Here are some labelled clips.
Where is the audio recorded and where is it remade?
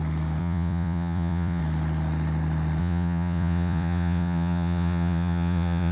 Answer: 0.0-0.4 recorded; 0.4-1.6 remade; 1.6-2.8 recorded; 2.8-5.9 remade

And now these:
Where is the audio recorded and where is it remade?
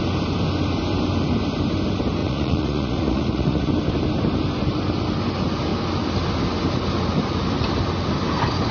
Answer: 0.0-2.2 recorded; 2.2-3.7 remade; 3.7-8.7 recorded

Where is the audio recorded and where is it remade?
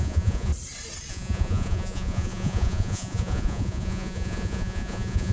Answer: 0.0-0.5 remade; 0.5-1.1 recorded; 1.1-5.3 remade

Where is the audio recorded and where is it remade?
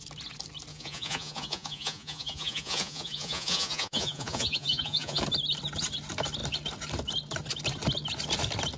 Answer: 0.0-0.7 recorded; 0.7-5.2 remade; 5.2-8.8 recorded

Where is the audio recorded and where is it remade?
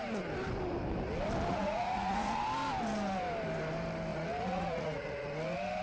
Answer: 0.0-1.5 recorded; 1.5-2.4 remade; 2.4-4.1 recorded; 4.1-5.3 remade; 5.3-5.8 recorded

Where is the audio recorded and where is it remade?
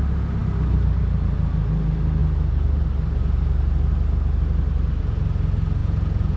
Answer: 0.0-5.8 recorded; 5.8-6.4 remade